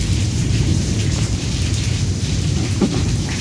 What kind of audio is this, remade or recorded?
remade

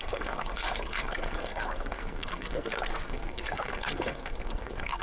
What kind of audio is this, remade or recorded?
remade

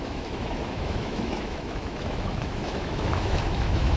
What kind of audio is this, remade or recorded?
remade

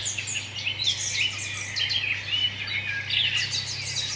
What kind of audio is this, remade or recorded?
recorded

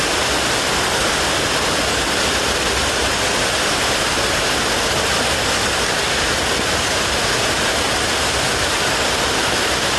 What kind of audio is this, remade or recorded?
recorded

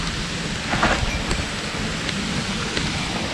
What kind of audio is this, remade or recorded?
recorded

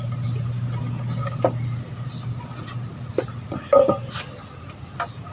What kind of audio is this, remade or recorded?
recorded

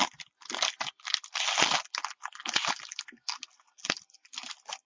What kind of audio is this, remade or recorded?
recorded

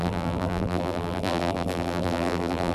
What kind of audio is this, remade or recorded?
remade